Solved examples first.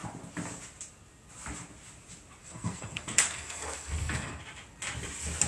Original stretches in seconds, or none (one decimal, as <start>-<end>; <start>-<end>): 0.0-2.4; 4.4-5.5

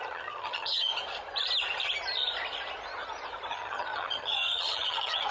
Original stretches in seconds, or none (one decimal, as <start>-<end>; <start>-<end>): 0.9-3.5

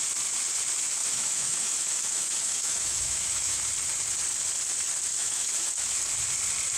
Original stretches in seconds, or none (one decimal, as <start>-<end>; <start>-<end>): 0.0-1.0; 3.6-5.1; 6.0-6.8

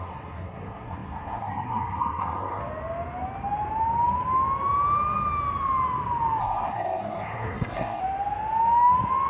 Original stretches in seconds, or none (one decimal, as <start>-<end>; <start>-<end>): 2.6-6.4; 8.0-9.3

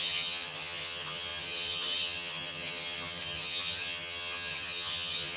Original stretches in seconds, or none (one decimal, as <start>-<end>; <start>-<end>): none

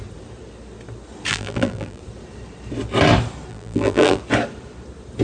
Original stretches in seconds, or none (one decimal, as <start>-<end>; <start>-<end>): 0.0-1.3; 2.0-3.5; 4.2-5.2